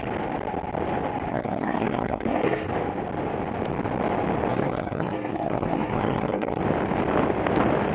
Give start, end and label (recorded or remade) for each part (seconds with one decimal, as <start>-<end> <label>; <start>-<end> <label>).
0.0-1.3 recorded; 1.3-2.7 remade; 2.7-4.5 recorded; 4.5-6.6 remade; 6.6-7.9 recorded